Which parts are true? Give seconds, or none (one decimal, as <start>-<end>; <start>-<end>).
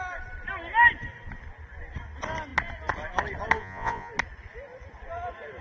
0.0-3.6; 4.1-5.6